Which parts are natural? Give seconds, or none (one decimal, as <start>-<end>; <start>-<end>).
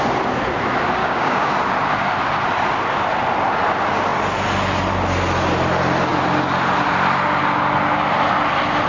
0.0-1.0; 1.5-8.9